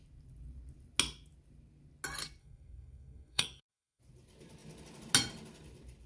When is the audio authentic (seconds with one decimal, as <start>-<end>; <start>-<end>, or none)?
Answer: 0.0-2.4; 4.0-6.1